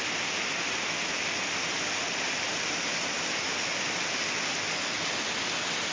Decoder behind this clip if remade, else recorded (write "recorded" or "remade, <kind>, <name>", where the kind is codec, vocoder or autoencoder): recorded